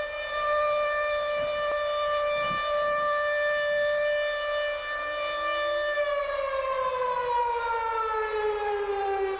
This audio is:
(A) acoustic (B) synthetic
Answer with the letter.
A